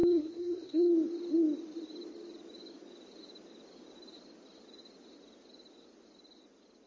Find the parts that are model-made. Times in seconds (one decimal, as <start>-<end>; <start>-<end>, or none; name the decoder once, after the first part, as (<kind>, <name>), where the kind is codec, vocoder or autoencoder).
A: 0.0-0.9 (codec, SNAC)